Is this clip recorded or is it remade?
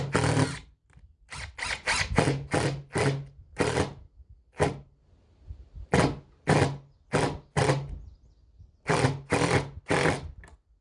recorded